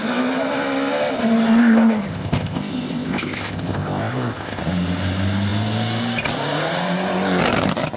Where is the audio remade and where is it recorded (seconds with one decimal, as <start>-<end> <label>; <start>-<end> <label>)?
0.0-1.6 recorded; 1.6-4.6 remade; 4.6-8.0 recorded